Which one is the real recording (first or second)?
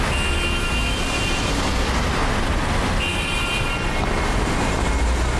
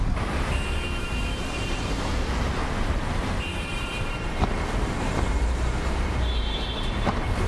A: first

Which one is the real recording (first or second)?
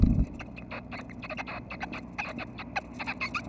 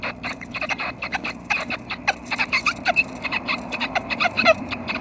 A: first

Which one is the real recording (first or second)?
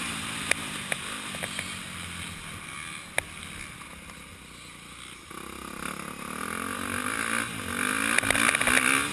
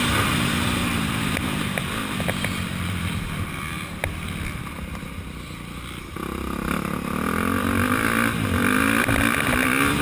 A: first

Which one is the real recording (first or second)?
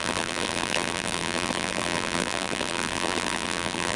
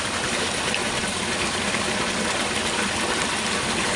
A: second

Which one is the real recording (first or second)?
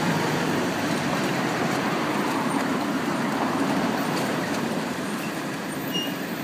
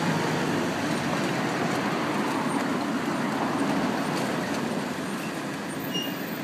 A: second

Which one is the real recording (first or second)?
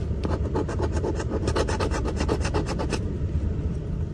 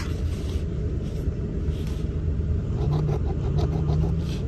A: second